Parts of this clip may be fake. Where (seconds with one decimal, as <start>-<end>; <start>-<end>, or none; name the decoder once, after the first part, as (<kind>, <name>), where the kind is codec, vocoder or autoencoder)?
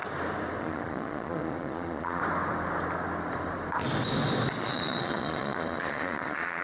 0.6-2.2 (vocoder, Vocos); 4.6-6.6